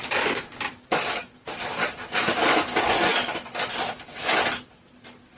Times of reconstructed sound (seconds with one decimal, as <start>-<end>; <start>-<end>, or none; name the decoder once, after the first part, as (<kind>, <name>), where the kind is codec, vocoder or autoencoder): none